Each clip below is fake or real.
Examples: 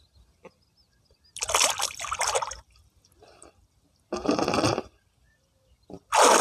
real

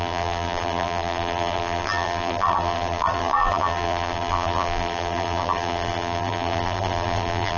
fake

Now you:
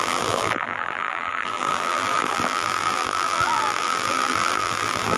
fake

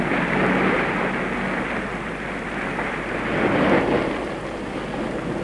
real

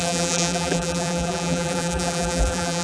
fake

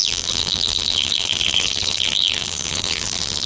fake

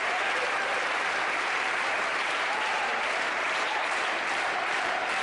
fake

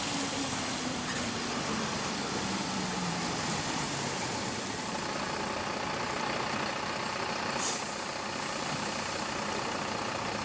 fake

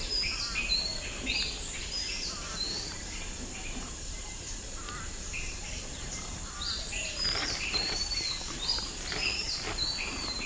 fake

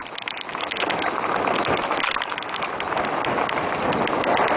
real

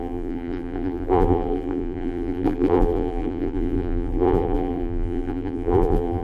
fake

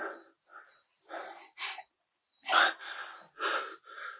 real